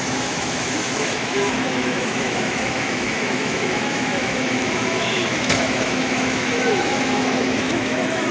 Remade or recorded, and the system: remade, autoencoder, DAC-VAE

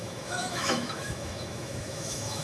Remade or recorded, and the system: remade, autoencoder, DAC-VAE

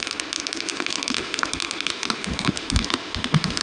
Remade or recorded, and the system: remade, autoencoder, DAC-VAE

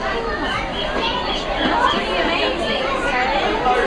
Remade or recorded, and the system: recorded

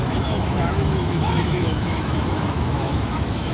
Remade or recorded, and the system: remade, autoencoder, DAC-VAE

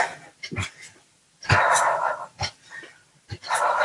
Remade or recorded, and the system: recorded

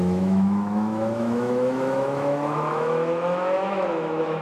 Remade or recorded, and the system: remade, autoencoder, DAC-VAE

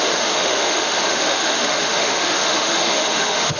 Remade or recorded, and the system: remade, autoencoder, DAC-VAE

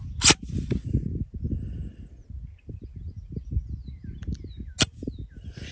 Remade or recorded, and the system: recorded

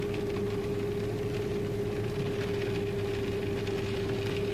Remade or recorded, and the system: recorded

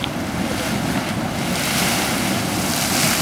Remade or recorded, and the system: recorded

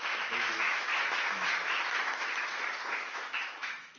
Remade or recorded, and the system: remade, autoencoder, DAC-VAE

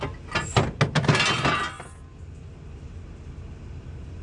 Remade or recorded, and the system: recorded